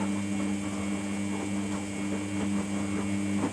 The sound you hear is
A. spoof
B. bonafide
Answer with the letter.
B